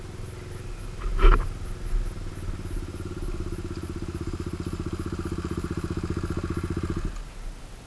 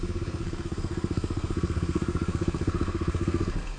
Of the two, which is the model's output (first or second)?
second